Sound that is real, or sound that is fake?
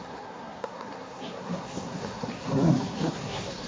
fake